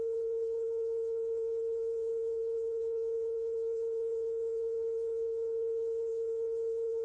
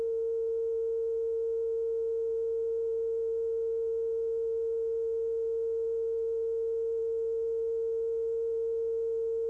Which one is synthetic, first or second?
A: first